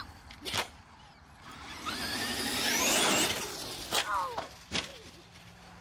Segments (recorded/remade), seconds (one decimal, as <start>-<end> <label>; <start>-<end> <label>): 0.0-5.8 recorded